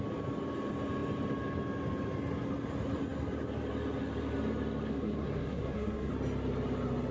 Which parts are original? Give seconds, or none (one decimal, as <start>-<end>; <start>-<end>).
0.0-4.9; 6.1-7.1